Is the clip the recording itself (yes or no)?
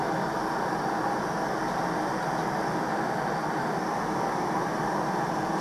yes